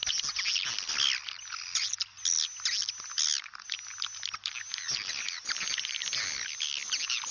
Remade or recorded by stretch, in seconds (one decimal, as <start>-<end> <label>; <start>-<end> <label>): 0.0-7.3 recorded